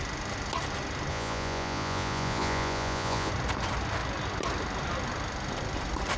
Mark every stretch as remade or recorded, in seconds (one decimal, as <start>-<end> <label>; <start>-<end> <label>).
0.0-1.1 recorded; 1.1-3.3 remade; 3.3-6.2 recorded